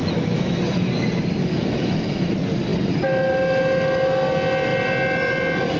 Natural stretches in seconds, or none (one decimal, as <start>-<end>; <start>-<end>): 0.6-1.4; 2.3-5.8